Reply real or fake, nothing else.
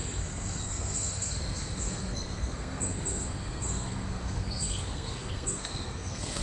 fake